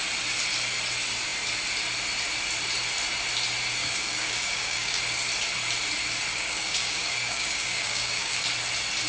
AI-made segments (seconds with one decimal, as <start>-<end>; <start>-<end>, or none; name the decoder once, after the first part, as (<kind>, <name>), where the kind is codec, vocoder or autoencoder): 3.8-5.0 (codec, DAC); 6.3-8.4